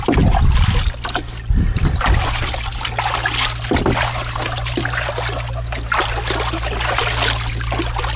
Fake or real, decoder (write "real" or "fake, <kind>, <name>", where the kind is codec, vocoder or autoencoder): real